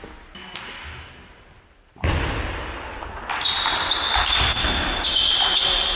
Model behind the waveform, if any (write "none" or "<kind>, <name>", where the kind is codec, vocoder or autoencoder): none